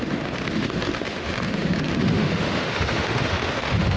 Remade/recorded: remade